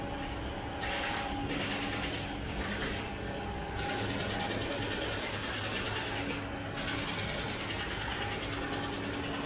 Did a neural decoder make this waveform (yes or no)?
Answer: no